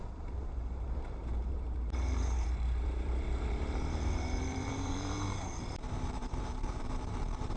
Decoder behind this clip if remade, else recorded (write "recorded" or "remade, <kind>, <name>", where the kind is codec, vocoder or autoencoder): remade, vocoder, BigVGAN v2